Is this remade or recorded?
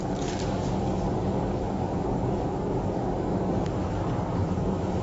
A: remade